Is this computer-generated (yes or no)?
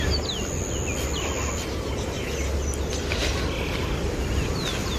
no